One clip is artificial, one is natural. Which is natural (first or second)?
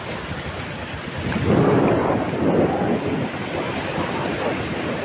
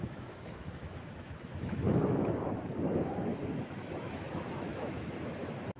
first